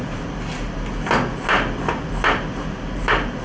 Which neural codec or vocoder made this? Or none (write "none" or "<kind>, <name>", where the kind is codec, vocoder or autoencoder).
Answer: none